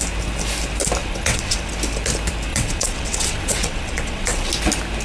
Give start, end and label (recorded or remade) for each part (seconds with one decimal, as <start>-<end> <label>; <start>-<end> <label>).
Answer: 0.0-1.0 recorded; 1.0-1.7 remade; 1.7-2.5 recorded; 2.5-4.5 remade; 4.5-5.0 recorded